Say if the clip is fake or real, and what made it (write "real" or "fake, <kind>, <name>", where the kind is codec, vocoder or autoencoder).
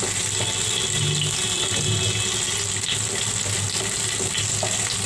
real